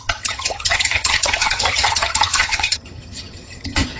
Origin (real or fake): fake